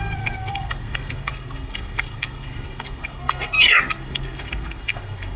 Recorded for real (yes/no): no